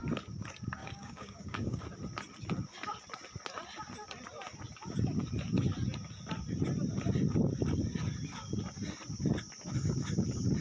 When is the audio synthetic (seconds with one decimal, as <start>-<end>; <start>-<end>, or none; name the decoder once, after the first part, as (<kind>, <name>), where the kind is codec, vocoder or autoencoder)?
0.8-1.8 (codec, DAC)